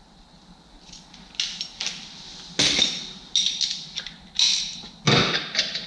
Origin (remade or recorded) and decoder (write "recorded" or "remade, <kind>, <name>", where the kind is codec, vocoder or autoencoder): recorded